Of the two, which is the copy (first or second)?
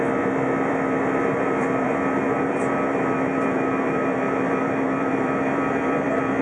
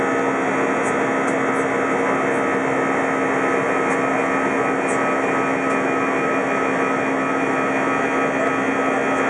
first